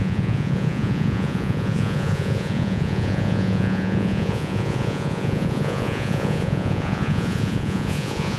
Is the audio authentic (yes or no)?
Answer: no